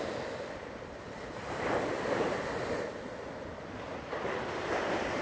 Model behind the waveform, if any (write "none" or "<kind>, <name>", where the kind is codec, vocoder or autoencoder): none